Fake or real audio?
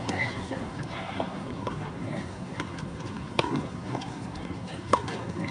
fake